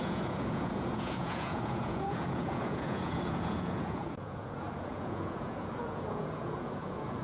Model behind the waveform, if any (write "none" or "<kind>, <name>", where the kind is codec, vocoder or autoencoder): vocoder, Vocos